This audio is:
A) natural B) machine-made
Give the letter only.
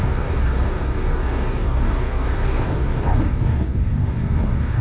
B